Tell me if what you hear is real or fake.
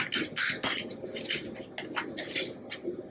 real